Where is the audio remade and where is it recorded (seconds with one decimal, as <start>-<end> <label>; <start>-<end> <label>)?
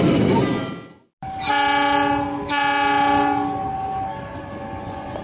0.0-4.3 recorded; 4.3-5.2 remade